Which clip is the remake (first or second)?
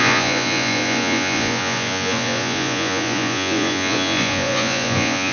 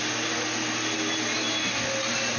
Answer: first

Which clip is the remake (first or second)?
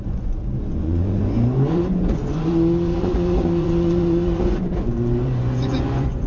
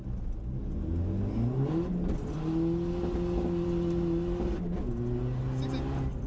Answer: first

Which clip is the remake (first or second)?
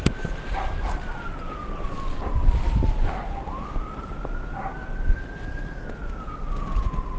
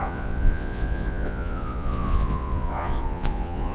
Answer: second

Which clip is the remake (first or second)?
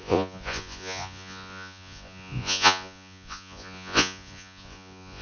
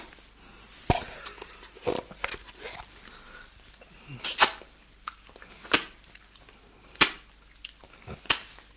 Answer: first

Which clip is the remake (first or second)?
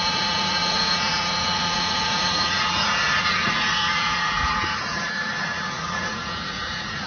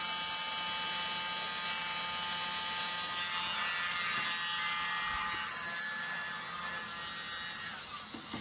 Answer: first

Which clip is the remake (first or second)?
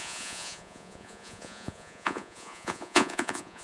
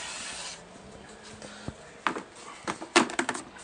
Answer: first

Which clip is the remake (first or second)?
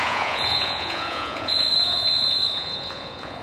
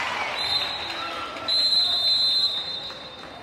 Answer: first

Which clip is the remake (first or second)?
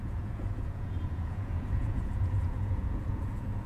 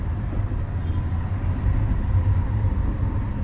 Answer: first